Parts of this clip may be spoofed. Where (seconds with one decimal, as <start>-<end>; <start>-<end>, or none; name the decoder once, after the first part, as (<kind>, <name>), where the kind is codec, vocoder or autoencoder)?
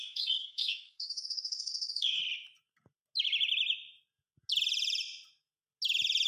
0.0-2.2 (codec, DAC)